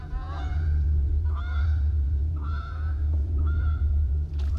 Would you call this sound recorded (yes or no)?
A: no